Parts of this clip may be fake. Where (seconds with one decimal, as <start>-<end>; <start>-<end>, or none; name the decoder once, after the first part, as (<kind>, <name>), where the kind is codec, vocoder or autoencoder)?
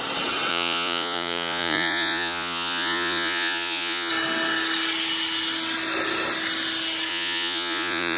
0.5-4.1 (vocoder, Vocos); 7.1-8.2